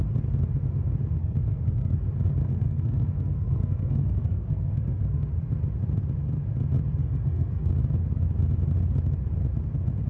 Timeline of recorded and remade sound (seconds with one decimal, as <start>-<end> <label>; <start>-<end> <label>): 0.0-1.2 recorded; 1.2-2.0 remade; 2.0-2.4 recorded; 2.4-5.3 remade; 5.3-7.0 recorded; 7.0-7.7 remade; 7.7-10.1 recorded